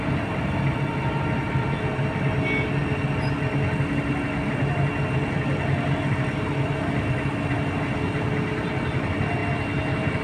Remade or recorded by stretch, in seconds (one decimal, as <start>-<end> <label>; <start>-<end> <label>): 0.0-10.2 recorded